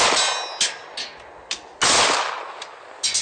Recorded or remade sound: recorded